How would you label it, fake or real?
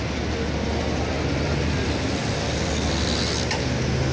real